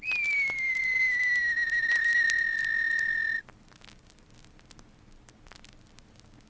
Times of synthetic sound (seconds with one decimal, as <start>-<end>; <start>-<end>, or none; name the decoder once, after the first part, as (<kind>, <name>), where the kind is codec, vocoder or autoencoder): none